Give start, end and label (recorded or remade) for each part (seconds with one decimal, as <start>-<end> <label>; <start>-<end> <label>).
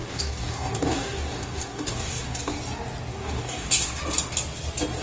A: 0.0-2.6 remade; 2.6-3.1 recorded; 3.1-4.0 remade; 4.0-5.0 recorded